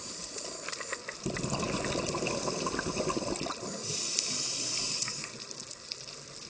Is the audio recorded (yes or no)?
yes